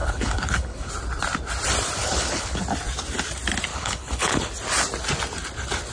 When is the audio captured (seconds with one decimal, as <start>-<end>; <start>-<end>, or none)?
0.9-2.0; 2.6-3.7; 4.5-5.9